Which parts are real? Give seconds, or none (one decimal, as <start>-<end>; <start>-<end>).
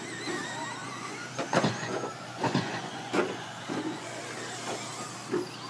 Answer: 0.0-0.8; 4.2-5.7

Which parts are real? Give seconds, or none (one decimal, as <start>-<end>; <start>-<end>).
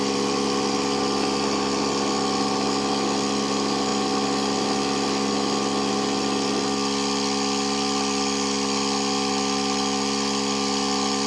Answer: 0.0-11.3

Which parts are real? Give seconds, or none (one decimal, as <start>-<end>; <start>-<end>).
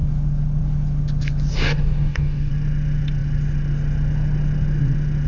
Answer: 0.0-1.5; 2.5-5.3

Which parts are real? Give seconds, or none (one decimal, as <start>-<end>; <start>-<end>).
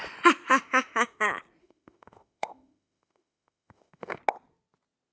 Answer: 0.0-0.5; 1.2-1.6; 4.2-5.1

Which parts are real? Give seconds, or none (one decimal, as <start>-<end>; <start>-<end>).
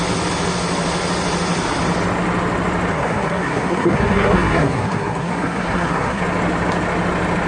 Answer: 0.0-2.9; 6.2-7.5